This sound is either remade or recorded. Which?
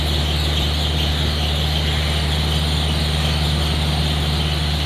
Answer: recorded